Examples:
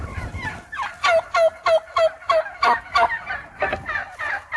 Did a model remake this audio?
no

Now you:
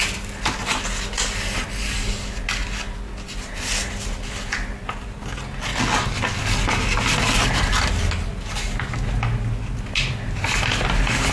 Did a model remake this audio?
no